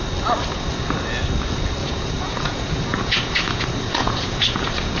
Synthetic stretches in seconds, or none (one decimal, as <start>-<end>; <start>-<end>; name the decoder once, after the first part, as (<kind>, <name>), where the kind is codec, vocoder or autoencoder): 1.8-5.0 (vocoder, Vocos)